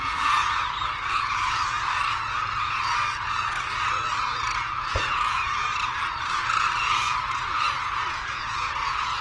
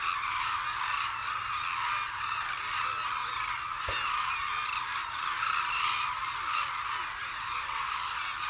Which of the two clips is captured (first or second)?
second